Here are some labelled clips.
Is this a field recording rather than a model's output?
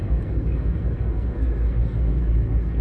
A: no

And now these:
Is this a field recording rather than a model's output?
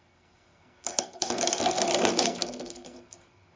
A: no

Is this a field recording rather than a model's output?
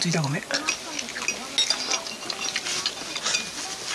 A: yes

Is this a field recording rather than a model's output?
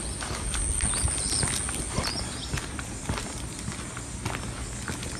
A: yes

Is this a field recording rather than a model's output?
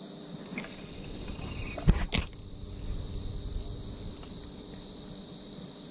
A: yes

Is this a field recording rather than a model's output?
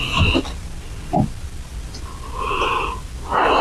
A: yes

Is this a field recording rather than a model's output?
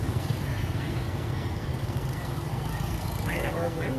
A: no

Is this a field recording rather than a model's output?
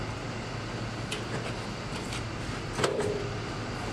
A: yes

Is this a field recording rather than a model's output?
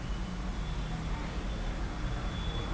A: yes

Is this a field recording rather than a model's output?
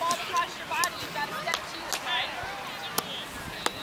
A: yes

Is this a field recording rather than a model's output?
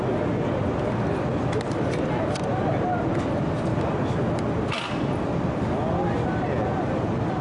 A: yes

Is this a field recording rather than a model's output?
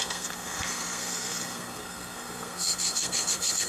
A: no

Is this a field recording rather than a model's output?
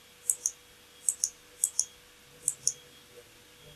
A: yes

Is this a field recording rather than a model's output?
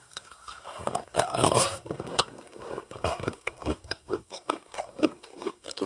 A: no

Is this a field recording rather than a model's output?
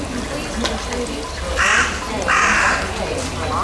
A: yes